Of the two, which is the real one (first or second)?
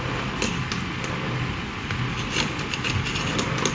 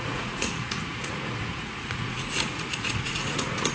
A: first